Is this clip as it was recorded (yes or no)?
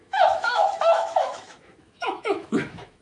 no